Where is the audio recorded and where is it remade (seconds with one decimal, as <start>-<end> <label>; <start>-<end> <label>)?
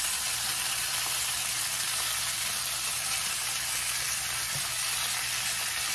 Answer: 0.0-5.9 recorded